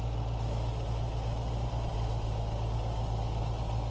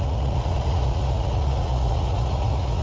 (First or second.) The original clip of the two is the first